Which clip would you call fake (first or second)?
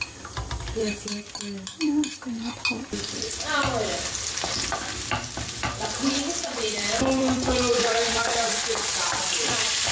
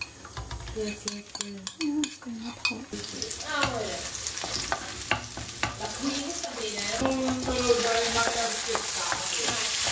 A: first